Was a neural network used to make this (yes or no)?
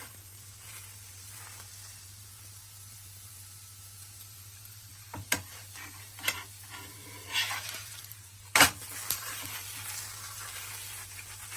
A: yes